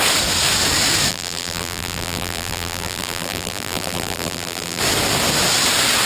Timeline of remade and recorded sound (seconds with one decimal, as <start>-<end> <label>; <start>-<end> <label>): 0.0-1.1 recorded; 1.1-4.8 remade; 4.8-6.1 recorded